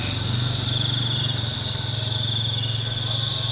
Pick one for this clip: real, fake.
real